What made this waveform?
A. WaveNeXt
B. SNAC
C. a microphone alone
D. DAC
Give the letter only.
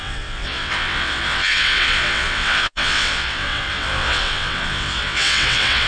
A